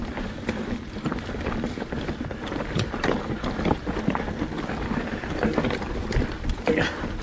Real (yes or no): no